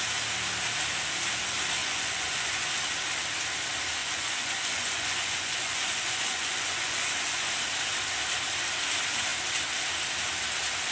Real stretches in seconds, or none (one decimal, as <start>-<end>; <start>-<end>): 0.0-1.8; 2.7-4.0; 7.5-10.9